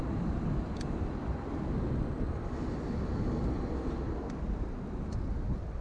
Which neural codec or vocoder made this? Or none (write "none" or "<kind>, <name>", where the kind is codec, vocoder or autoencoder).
none